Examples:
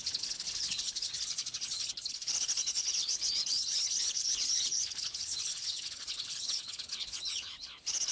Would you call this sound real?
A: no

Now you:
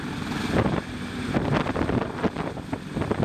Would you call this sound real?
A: yes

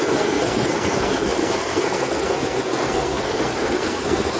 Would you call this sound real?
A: no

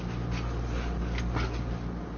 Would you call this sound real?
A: yes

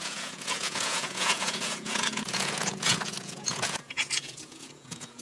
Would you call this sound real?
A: no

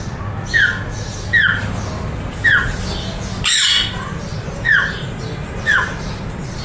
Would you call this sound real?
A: yes